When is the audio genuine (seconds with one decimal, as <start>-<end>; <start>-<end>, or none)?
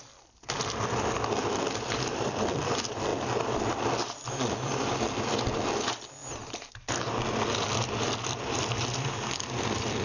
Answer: none